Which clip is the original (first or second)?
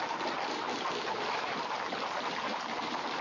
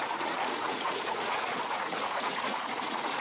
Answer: first